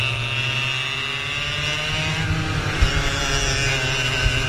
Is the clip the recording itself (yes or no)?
yes